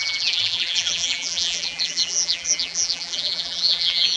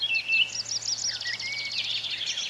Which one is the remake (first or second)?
first